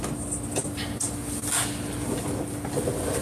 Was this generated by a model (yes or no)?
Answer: no